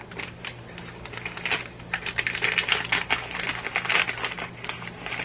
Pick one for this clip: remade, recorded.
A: recorded